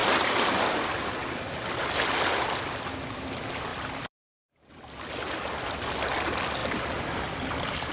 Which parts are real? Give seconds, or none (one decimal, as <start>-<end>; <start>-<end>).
0.7-3.7; 4.7-6.6